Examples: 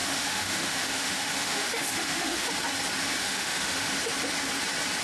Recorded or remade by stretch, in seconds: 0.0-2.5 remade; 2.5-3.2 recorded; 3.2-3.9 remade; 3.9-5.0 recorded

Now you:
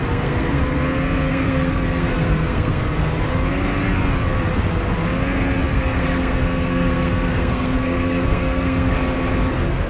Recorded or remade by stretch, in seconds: 0.0-0.6 remade; 0.6-1.3 recorded; 1.3-2.8 remade; 2.8-5.7 recorded; 5.7-8.9 remade; 8.9-9.9 recorded